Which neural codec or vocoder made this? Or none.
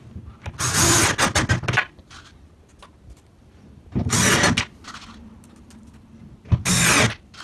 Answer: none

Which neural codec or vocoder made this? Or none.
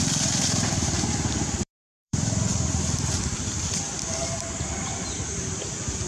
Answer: vocoder, BigVGAN v2